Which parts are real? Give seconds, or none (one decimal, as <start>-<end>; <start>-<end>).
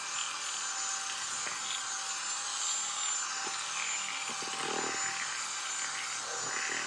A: 0.0-6.9